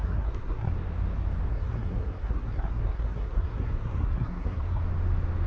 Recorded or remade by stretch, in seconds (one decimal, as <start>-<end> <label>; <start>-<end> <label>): 0.0-0.7 remade; 0.7-1.5 recorded; 1.5-4.8 remade; 4.8-5.5 recorded